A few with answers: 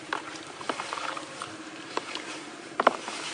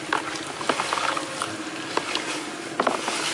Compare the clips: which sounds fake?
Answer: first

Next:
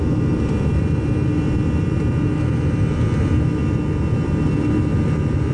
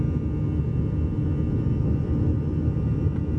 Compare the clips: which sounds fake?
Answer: first